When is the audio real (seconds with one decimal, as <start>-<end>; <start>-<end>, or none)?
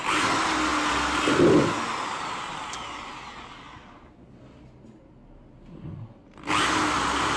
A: 0.0-7.4